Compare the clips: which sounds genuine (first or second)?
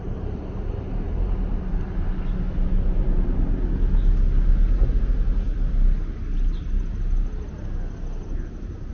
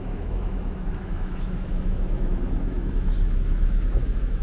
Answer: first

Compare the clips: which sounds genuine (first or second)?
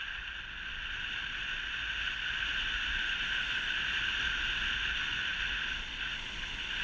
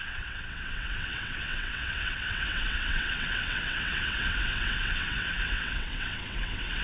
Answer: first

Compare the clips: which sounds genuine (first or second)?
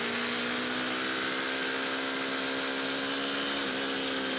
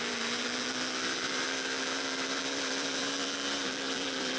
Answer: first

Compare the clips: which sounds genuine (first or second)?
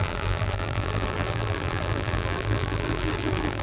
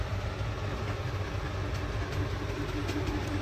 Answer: second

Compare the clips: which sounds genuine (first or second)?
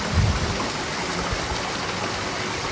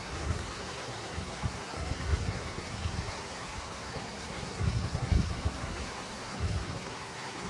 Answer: first